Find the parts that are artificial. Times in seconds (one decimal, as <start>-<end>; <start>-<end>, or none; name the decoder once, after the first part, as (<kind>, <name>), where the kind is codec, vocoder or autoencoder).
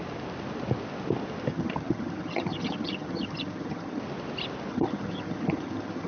1.5-4.0 (vocoder, HiFi-GAN); 4.7-6.1